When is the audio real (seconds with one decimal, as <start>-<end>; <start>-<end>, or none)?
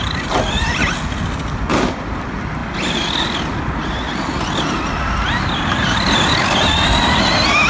0.0-7.7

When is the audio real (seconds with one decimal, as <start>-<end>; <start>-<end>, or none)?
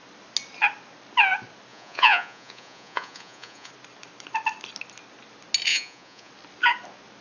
0.0-1.7; 3.7-5.7; 6.3-7.2